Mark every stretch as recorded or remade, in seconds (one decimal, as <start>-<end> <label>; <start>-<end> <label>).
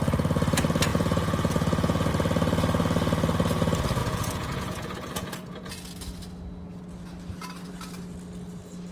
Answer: 0.0-0.9 recorded; 0.9-2.1 remade; 2.1-4.0 recorded; 4.0-5.7 remade; 5.7-8.9 recorded